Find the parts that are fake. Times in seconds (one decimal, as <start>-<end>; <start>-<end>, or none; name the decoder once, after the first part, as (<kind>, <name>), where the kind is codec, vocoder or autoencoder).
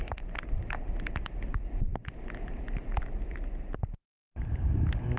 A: none